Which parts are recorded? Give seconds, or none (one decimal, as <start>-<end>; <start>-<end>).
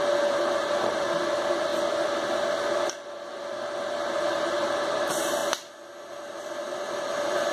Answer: 1.7-3.3; 5.4-6.1